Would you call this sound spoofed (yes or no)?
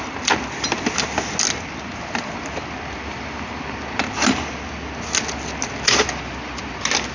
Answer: no